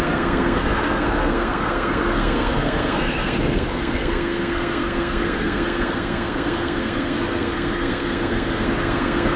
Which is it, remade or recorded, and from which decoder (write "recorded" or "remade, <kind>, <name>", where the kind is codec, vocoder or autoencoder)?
remade, codec, SNAC